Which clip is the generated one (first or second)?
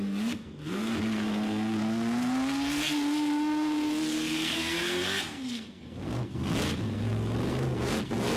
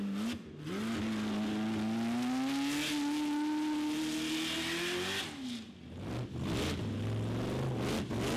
first